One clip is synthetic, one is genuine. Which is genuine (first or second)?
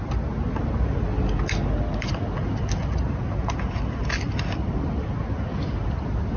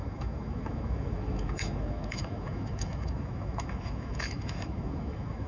first